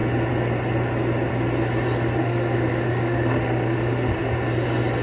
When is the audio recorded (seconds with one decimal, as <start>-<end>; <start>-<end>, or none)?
0.0-2.2; 4.3-5.0